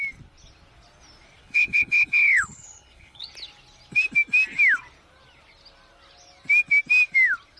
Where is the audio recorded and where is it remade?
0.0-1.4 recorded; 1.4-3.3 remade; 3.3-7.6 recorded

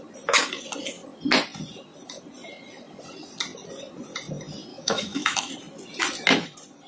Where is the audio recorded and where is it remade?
0.0-4.7 recorded; 4.7-5.5 remade; 5.5-6.9 recorded

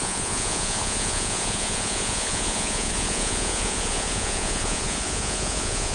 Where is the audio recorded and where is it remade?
0.0-5.9 remade